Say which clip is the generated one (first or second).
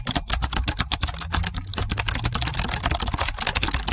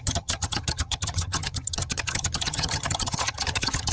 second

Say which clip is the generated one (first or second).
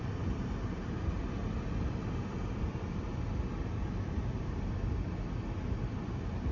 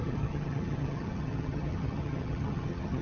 second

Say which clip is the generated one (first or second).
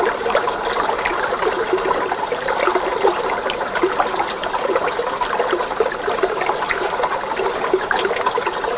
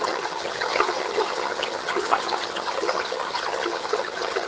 second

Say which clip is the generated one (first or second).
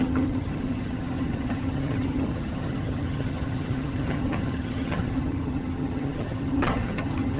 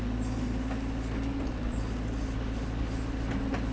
first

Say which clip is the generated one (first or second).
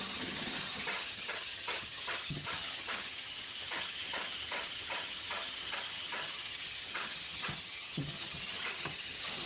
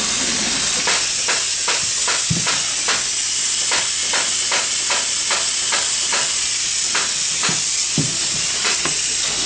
first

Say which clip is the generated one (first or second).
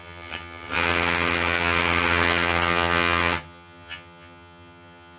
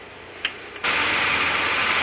first